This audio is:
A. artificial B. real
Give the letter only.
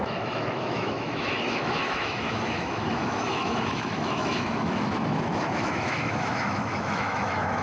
A